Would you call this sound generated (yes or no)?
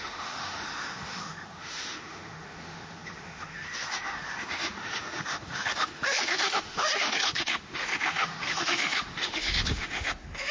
yes